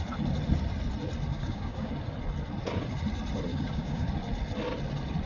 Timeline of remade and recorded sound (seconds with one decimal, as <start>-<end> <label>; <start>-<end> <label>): 0.0-1.3 recorded; 1.3-1.9 remade; 1.9-3.5 recorded; 3.5-4.1 remade; 4.1-5.3 recorded